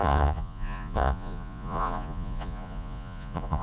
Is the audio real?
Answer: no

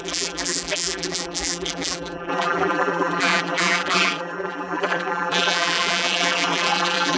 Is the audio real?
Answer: no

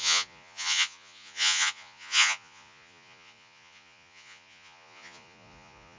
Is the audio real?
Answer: no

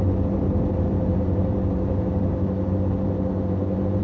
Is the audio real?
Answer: no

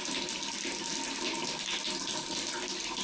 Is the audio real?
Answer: yes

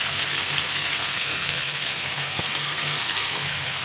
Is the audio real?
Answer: no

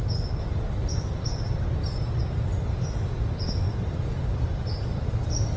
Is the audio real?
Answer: yes